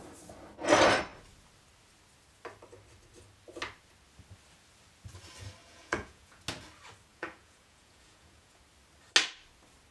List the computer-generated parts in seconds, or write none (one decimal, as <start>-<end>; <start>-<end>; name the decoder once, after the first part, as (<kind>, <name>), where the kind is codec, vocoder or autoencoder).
5.6-6.4 (vocoder, Vocos); 7.1-8.6